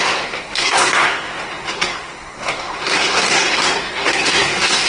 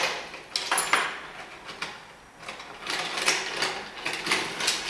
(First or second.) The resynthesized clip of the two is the first